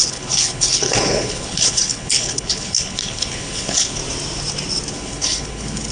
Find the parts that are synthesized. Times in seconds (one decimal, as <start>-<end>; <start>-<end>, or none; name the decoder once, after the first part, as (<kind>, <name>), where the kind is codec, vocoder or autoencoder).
0.0-4.0 (codec, HILCodec); 4.9-5.9